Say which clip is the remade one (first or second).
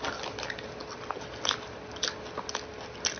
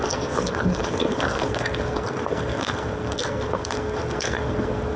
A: second